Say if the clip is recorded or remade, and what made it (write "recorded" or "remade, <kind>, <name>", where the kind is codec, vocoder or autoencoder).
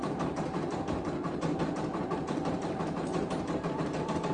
remade, vocoder, BigVGAN v2